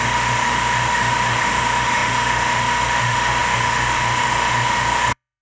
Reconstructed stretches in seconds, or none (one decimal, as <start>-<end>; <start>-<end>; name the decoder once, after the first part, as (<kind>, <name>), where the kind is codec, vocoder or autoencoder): 0.0-5.4 (autoencoder, DAC-VAE)